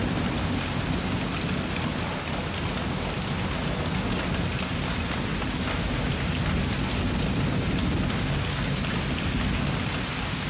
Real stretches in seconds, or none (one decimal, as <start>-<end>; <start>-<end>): 0.0-10.5